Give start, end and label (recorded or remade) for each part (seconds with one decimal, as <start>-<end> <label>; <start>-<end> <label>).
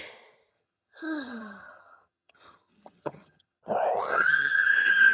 0.0-0.5 recorded; 0.5-3.6 remade; 3.6-4.1 recorded; 4.1-5.1 remade